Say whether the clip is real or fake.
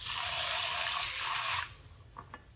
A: real